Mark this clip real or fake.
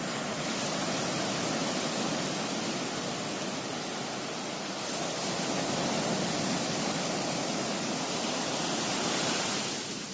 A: real